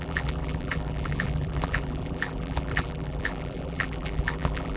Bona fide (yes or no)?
no